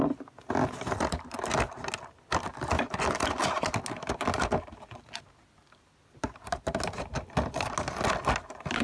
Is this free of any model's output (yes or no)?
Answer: yes